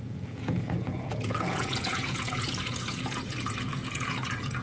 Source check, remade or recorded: remade